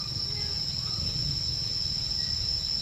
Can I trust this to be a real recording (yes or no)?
yes